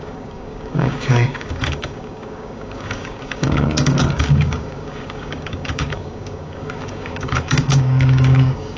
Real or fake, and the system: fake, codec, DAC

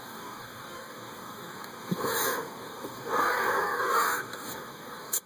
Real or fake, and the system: fake, codec, DAC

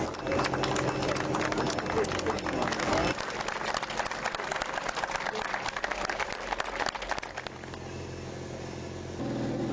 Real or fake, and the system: real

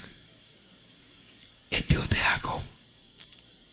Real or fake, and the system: fake, codec, DAC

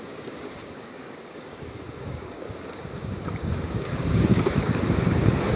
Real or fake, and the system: fake, codec, DAC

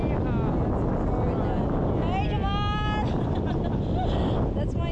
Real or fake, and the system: real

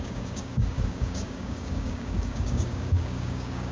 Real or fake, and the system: fake, codec, DAC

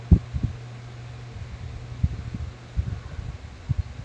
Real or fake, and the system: real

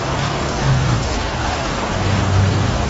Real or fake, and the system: fake, codec, DAC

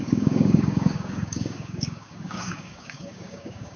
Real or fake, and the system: fake, codec, DAC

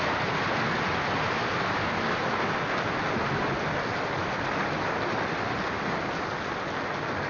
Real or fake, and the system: real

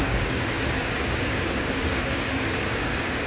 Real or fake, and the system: fake, codec, DAC